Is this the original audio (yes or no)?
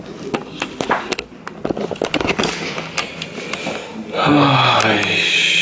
yes